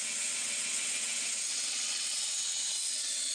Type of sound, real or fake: fake